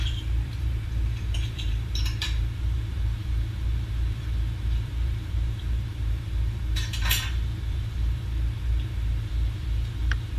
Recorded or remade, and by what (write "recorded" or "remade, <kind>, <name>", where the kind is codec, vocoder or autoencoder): remade, vocoder, BigVGAN v2